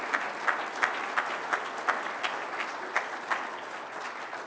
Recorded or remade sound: recorded